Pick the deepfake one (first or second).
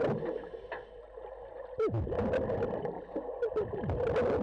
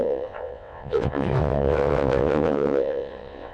second